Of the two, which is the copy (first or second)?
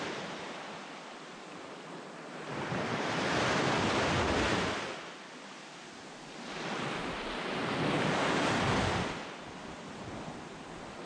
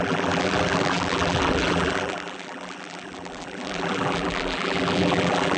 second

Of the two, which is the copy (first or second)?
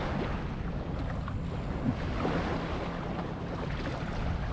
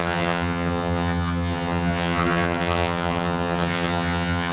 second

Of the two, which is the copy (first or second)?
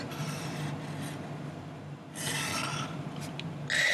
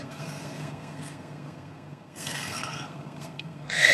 second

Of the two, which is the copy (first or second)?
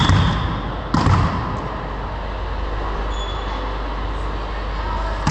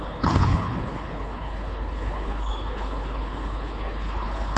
second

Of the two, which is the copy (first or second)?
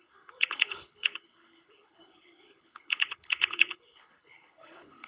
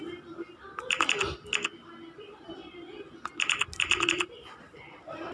first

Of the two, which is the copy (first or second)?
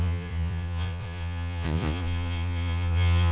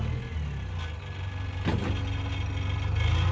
first